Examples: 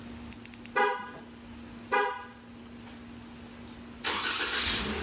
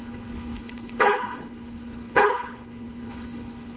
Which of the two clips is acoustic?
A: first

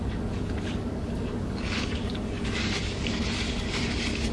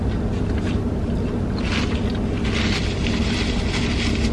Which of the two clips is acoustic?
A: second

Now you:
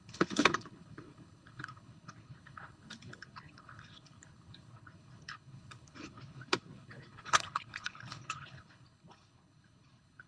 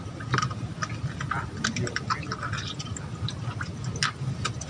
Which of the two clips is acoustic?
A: second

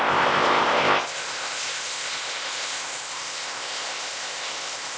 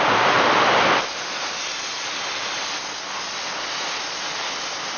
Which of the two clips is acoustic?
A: second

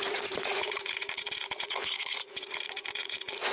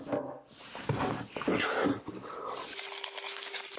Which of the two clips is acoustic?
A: second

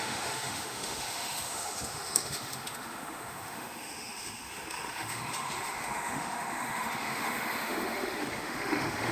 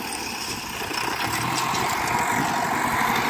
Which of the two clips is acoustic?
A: second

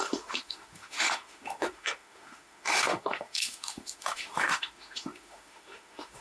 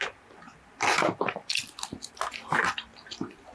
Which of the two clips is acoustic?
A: second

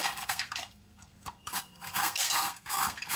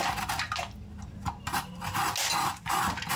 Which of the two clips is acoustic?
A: second